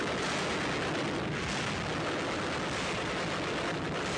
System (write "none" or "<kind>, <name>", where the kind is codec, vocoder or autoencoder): none